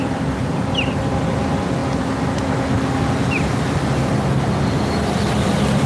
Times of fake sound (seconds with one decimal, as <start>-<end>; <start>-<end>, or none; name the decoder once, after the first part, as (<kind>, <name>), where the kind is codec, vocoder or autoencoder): 0.0-0.4 (vocoder, BigVGAN v2); 1.0-1.8; 5.3-5.9